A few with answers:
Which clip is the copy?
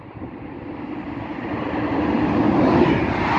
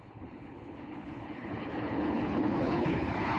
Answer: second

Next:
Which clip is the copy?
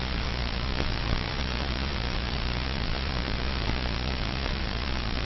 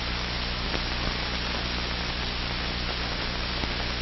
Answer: first